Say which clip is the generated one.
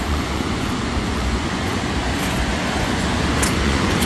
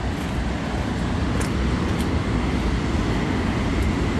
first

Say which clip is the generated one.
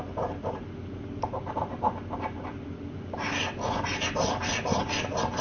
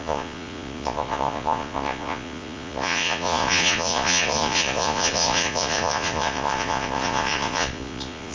second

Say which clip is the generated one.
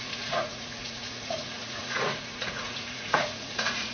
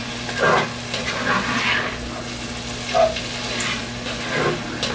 first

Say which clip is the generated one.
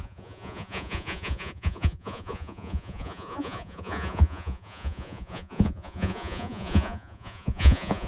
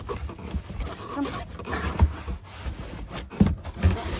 first